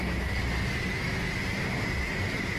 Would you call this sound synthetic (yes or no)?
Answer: no